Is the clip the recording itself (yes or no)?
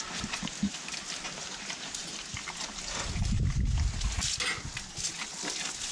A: yes